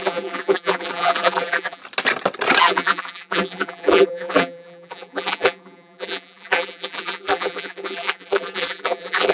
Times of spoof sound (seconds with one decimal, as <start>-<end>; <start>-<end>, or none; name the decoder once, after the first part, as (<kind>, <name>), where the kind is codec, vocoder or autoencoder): 0.0-1.8 (vocoder, BigVGAN v2); 2.6-9.3